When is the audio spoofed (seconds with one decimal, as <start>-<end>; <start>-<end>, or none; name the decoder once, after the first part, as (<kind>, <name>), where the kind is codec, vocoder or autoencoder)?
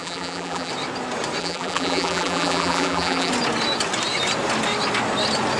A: 0.0-0.7 (vocoder, BigVGAN v2); 1.4-3.3